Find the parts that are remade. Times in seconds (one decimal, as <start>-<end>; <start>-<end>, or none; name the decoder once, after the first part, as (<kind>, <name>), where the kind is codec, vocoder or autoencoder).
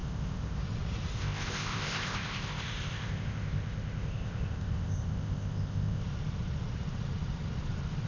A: 0.0-0.6 (codec, ZipCodec); 1.1-6.0